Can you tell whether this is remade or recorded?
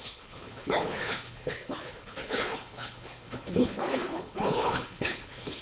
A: remade